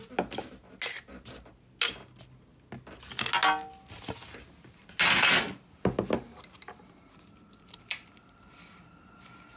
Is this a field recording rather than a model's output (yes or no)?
yes